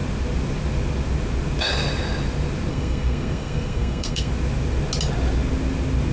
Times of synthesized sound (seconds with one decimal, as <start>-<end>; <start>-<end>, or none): 2.7-4.3